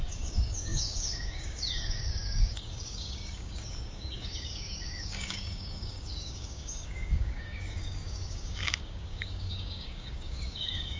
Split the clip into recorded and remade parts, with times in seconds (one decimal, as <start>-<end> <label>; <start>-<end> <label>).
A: 0.0-11.0 remade